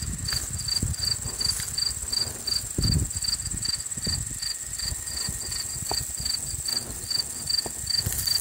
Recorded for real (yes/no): yes